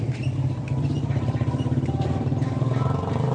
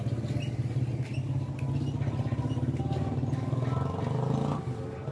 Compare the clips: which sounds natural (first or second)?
second